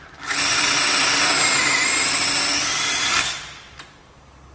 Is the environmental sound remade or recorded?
recorded